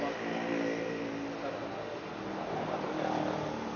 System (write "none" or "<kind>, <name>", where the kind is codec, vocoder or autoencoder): none